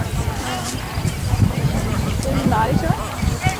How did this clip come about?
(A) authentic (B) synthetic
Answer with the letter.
B